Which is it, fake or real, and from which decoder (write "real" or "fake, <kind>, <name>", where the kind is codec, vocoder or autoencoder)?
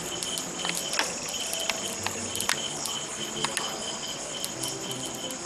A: real